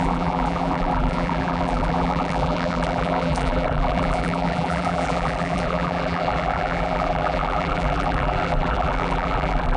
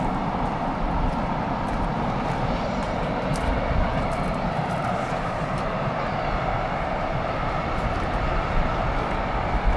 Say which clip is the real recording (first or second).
second